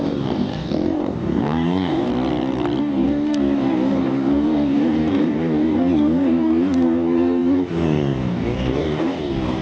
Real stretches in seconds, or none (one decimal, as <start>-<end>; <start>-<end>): 2.1-2.8